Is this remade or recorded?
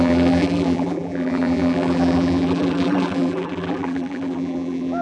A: remade